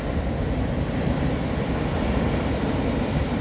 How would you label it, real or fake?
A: real